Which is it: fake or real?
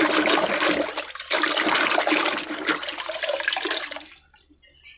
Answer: real